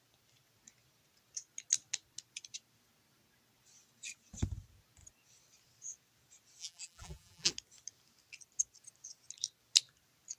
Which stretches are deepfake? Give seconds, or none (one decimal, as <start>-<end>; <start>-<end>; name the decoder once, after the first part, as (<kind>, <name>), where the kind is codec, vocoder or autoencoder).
6.6-7.5 (vocoder, BigVGAN v2)